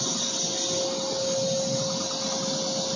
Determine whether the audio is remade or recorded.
recorded